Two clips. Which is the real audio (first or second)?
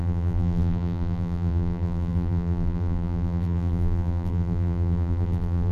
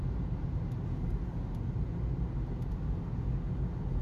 second